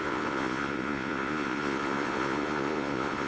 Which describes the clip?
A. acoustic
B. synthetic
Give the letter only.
B